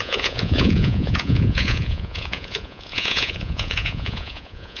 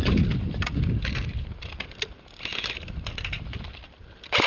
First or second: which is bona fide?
second